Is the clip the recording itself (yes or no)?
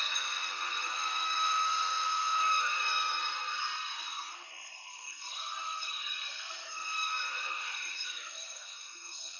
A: no